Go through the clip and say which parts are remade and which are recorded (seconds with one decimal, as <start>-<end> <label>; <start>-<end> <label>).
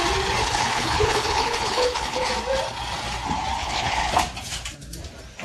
0.0-0.4 recorded; 0.4-2.3 remade; 2.3-3.6 recorded; 3.6-4.1 remade; 4.1-5.4 recorded